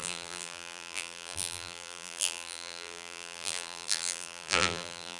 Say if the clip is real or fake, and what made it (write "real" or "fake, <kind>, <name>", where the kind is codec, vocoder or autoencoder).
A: fake, vocoder, BigVGAN v2